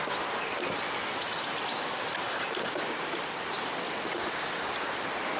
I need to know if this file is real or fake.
real